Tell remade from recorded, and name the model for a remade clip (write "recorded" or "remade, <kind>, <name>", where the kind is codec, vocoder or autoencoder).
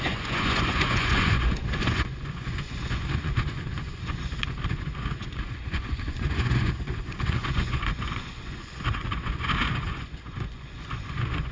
remade, vocoder, Vocos